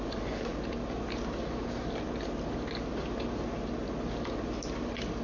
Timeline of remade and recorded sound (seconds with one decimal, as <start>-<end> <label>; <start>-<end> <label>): 0.0-5.2 recorded